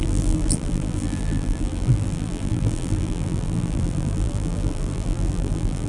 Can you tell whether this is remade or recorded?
remade